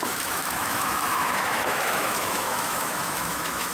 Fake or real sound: fake